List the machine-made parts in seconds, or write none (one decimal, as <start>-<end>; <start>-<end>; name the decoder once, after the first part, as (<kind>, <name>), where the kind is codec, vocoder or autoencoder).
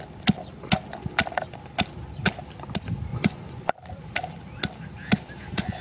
3.1-3.7 (vocoder, Vocos)